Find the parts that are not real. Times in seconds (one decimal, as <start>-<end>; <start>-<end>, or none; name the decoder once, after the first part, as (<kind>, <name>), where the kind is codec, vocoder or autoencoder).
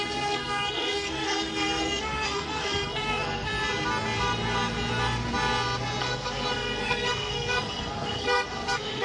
0.0-3.5 (codec, SNAC); 6.0-9.0